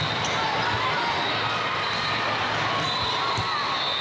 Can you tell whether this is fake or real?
real